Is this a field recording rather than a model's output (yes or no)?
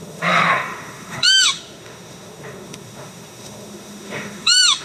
no